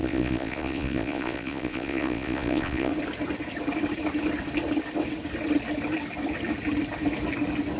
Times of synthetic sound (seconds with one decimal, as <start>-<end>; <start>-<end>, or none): 0.0-2.9